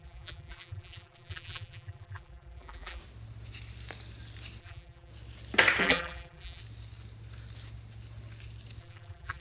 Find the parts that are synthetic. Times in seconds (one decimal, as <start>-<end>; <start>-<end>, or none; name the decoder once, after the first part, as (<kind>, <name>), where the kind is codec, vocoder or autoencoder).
0.0-3.0 (vocoder, BigVGAN v2); 4.6-5.1; 5.8-6.6; 8.8-9.4